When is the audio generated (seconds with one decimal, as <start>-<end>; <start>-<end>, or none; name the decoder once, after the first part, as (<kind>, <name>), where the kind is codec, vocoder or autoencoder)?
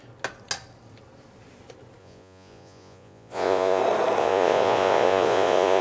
2.0-3.8 (vocoder, Vocos); 4.2-5.8